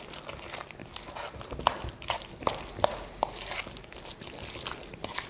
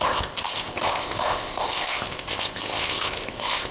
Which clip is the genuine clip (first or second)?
first